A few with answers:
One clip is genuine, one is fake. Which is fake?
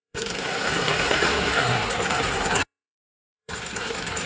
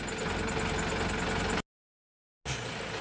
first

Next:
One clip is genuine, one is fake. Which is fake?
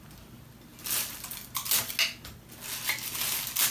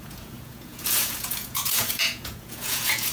second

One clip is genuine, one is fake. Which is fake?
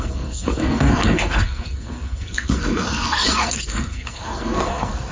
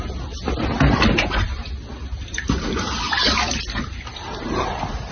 first